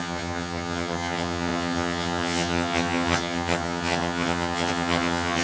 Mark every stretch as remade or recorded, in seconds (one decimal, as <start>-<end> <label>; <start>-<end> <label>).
0.0-5.4 remade